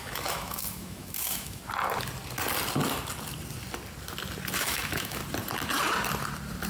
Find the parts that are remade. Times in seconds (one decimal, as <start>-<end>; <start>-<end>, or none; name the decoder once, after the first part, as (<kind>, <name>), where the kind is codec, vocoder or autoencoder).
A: 0.0-1.6 (autoencoder, DAC-VAE); 4.6-5.2